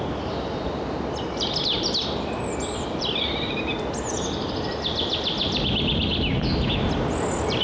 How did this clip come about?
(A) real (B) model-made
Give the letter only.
A